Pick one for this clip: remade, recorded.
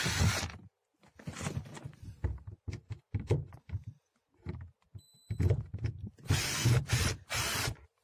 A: recorded